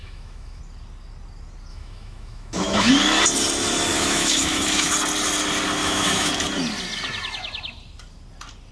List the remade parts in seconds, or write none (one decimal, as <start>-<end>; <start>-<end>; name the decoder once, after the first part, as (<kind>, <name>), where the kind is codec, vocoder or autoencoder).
0.0-0.6 (autoencoder, DAC-VAE); 1.7-2.9; 3.9-4.9; 5.8-6.3